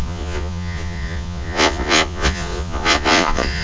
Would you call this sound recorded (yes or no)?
no